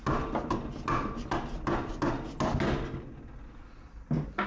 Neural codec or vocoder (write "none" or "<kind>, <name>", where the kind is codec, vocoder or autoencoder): none